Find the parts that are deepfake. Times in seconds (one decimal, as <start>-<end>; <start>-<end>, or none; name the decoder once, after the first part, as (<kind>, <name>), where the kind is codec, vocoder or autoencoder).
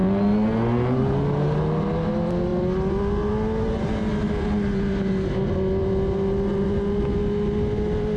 none